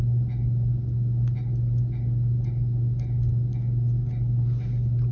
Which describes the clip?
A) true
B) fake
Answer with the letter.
A